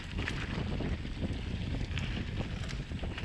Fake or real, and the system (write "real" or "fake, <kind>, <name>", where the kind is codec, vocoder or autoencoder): real